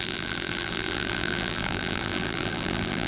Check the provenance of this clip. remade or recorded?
remade